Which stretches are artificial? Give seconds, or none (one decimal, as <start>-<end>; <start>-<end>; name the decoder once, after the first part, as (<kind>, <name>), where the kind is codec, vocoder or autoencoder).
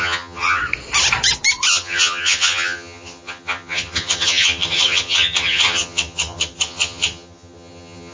0.0-0.6 (vocoder, HiFi-GAN); 1.7-8.1